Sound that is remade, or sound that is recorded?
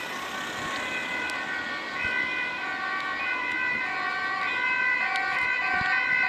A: recorded